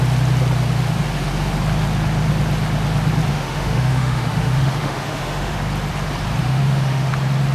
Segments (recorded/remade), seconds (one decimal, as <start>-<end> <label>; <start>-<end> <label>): 0.0-3.3 recorded; 3.3-5.6 remade; 5.6-6.4 recorded; 6.4-7.1 remade; 7.1-7.5 recorded